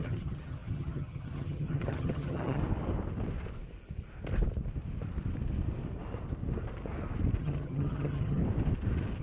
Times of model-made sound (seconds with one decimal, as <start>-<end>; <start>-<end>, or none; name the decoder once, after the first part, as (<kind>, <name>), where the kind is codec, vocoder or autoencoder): 0.0-2.6 (vocoder, HiFi-GAN); 7.4-8.4